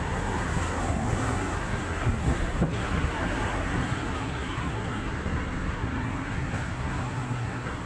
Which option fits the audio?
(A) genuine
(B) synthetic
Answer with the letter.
B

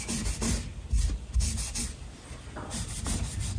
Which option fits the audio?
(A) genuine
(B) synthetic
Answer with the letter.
A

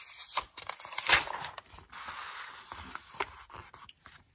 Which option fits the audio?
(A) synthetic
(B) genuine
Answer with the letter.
B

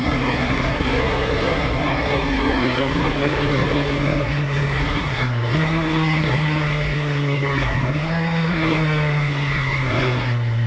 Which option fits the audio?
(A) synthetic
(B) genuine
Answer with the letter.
A